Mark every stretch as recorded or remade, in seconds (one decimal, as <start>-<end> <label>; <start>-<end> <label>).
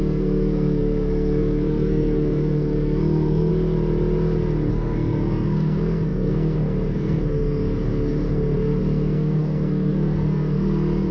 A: 0.0-3.5 remade; 3.5-4.7 recorded; 4.7-11.1 remade